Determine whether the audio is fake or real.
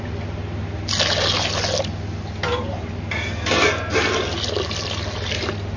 real